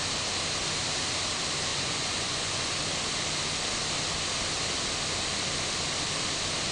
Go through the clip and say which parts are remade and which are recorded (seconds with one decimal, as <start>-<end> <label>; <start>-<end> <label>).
0.0-1.7 recorded; 1.7-2.7 remade; 2.7-6.7 recorded